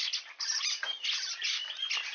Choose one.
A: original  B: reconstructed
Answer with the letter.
A